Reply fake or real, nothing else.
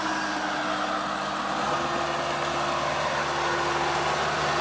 real